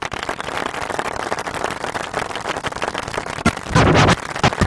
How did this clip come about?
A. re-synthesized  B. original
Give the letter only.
B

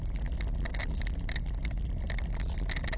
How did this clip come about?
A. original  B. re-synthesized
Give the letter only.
A